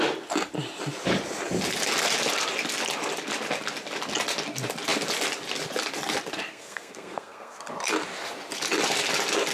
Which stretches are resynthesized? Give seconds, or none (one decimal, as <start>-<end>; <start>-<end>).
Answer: 6.5-7.6